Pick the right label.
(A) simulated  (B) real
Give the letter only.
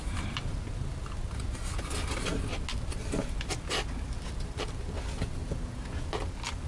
B